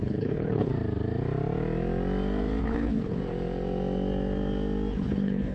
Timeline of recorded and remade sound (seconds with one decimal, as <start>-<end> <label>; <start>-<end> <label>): 0.0-0.7 remade; 0.7-2.6 recorded; 2.6-3.2 remade; 3.2-4.9 recorded; 4.9-5.5 remade